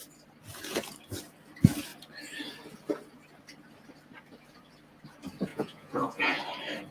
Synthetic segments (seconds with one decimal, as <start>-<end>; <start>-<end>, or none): 5.5-6.4